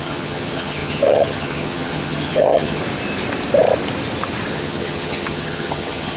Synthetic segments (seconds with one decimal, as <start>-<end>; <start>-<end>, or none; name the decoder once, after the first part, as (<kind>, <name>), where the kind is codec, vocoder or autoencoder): 0.0-2.8 (vocoder, HiFi-GAN); 4.5-6.2